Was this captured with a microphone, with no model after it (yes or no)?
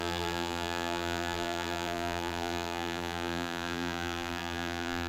no